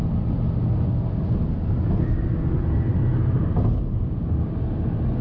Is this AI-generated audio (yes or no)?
no